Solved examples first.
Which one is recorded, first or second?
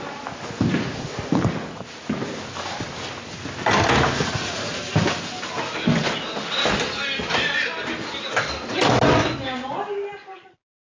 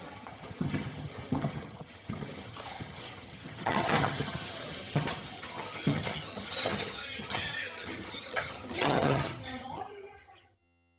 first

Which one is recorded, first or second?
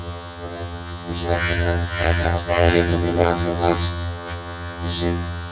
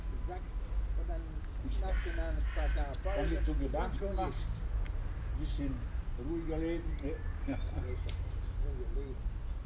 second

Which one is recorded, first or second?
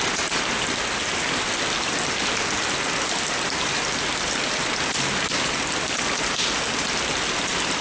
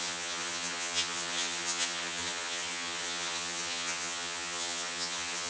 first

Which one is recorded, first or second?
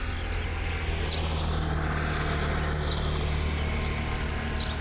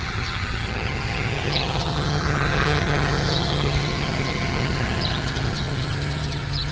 first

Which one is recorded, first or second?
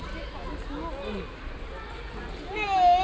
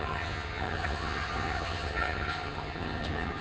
first